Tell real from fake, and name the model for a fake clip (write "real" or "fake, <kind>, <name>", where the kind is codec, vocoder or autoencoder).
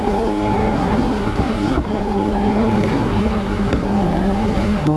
fake, codec, SNAC